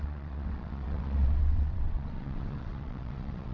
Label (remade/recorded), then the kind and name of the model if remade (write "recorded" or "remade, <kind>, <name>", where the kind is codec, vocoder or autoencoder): remade, vocoder, WaveNeXt